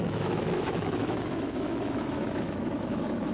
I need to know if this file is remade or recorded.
remade